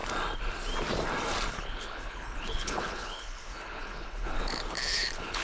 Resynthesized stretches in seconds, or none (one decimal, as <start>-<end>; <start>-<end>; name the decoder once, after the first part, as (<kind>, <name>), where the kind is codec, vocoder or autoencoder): 1.5-5.4 (codec, HILCodec)